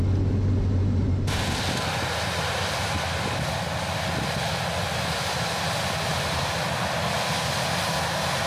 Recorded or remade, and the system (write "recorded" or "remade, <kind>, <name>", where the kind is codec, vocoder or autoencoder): recorded